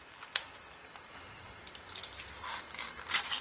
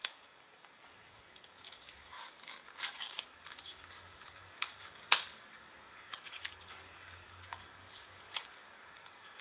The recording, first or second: first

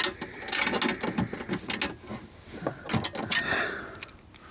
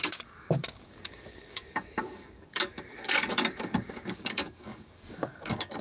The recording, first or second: first